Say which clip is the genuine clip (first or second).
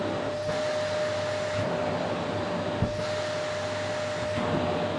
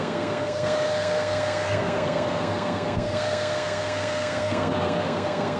first